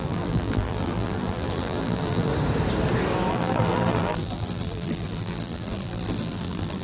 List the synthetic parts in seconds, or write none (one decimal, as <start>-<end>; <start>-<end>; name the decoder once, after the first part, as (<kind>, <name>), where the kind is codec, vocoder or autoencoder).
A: 0.0-2.3 (vocoder, BigVGAN v2); 3.3-6.8